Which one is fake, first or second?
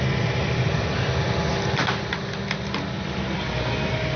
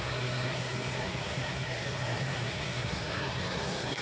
second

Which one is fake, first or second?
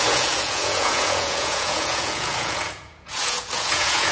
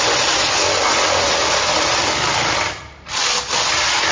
first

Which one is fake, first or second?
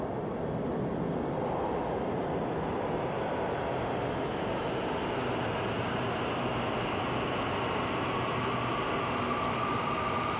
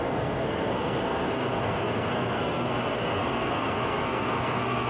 second